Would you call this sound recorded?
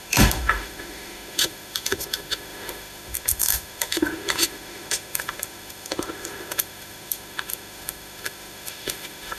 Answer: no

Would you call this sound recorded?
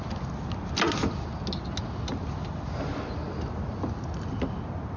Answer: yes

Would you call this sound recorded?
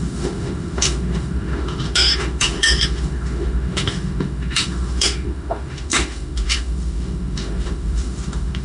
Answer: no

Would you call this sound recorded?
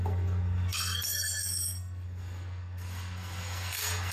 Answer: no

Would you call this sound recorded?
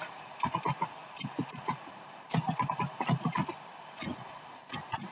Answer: yes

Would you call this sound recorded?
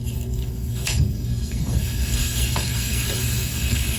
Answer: no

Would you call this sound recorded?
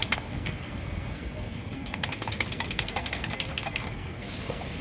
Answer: no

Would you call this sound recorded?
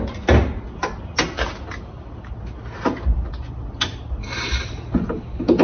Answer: yes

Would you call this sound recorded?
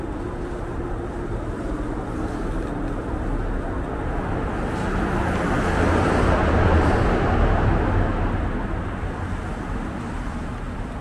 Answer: yes